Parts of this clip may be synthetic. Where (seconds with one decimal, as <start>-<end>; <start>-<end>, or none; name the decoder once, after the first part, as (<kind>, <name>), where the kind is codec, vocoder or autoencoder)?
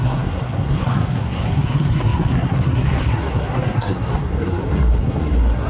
0.0-5.7 (codec, SNAC)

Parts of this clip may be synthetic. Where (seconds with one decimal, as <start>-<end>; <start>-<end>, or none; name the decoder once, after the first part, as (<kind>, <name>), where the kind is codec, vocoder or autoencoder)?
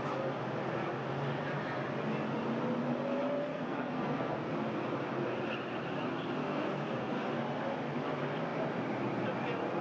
3.5-4.5 (codec, SNAC); 6.4-7.3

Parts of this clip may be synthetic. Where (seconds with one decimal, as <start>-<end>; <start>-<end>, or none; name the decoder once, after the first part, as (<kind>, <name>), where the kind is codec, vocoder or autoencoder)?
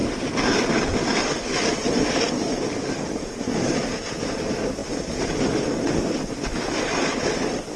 none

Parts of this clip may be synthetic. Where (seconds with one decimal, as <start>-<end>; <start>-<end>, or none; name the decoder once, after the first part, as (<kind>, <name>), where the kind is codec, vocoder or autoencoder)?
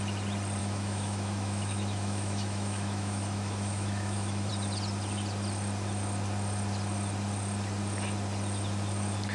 0.6-4.5 (autoencoder, DAC-VAE)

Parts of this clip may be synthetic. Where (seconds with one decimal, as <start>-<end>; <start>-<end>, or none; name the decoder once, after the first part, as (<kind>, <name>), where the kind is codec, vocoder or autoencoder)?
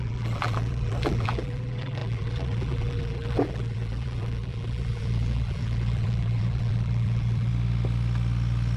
0.0-7.5 (vocoder, BigVGAN v2)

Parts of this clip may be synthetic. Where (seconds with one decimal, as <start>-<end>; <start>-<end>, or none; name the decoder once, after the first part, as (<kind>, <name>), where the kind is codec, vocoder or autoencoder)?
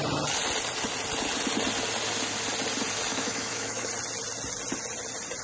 3.1-3.9 (autoencoder, DAC-VAE)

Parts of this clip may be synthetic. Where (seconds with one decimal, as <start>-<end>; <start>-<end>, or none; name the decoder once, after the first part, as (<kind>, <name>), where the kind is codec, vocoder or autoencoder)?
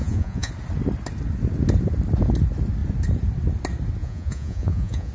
0.0-0.5 (vocoder, Vocos); 4.0-5.1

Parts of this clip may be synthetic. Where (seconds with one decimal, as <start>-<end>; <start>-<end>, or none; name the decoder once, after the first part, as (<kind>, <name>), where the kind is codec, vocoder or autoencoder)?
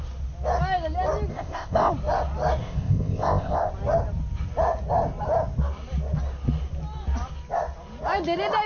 1.3-1.9 (codec, ZipCodec); 2.6-3.7